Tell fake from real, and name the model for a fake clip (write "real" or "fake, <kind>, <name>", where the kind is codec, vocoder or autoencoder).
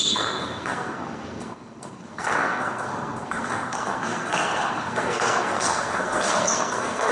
fake, codec, SNAC